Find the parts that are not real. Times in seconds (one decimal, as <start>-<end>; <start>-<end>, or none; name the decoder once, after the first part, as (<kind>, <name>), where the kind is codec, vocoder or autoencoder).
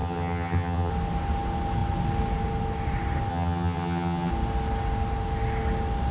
0.0-0.9 (vocoder, HiFi-GAN); 3.3-4.3